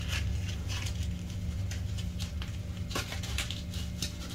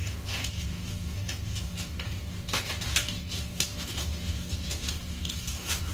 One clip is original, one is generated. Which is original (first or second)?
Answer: first